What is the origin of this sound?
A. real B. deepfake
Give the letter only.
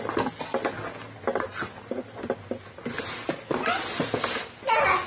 A